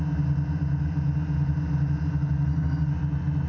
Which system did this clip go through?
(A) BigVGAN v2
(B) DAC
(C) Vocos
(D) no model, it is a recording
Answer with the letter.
D